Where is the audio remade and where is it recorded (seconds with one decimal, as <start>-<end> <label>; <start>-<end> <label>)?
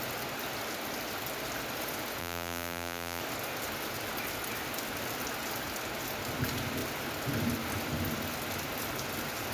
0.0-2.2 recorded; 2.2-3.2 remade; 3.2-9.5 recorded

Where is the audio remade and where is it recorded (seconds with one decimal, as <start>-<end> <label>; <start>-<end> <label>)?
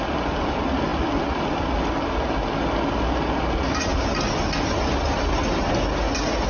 0.0-6.5 recorded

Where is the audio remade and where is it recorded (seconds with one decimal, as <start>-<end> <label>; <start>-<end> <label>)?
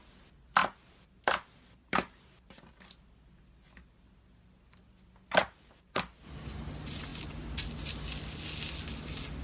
0.0-0.6 recorded; 0.6-2.6 remade; 2.6-5.4 recorded; 5.4-6.2 remade; 6.2-9.4 recorded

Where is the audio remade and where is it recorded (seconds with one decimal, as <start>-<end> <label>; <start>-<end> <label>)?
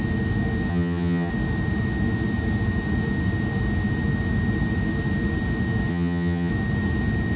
0.0-0.7 recorded; 0.7-1.3 remade; 1.3-5.9 recorded; 5.9-6.5 remade; 6.5-7.4 recorded